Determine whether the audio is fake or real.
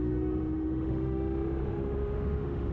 fake